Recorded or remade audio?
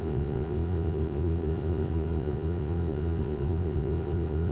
remade